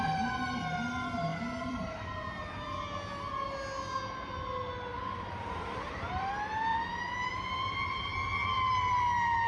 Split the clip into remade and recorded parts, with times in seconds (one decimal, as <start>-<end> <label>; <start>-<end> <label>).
0.0-1.3 recorded; 1.3-2.0 remade; 2.0-4.9 recorded; 4.9-6.3 remade; 6.3-6.7 recorded; 6.7-7.3 remade; 7.3-8.4 recorded; 8.4-9.5 remade